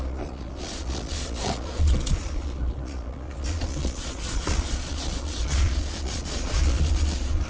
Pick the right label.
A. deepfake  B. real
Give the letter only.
A